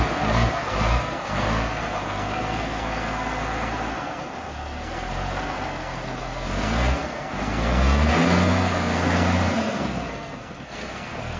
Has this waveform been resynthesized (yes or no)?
yes